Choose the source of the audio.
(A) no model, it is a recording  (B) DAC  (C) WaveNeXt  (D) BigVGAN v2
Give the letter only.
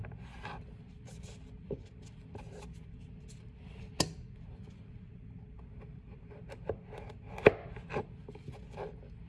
A